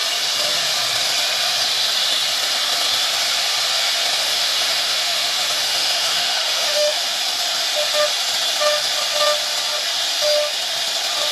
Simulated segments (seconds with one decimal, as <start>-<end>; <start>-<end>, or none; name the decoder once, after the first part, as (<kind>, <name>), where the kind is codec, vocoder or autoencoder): 4.2-7.0 (autoencoder, DAC-VAE)